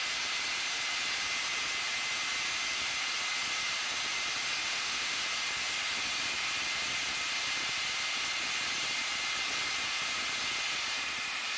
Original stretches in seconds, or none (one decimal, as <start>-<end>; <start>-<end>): 0.0-4.6; 5.2-11.6

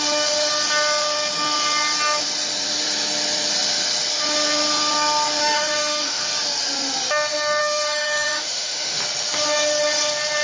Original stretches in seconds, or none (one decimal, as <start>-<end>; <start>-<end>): 0.0-5.4; 6.2-7.6; 9.0-10.4

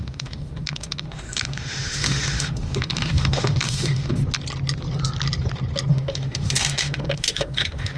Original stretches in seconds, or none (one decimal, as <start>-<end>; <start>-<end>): 4.2-5.9

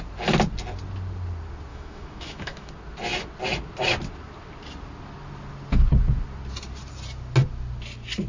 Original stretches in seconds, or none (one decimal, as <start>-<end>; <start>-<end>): 0.0-1.7; 2.7-8.3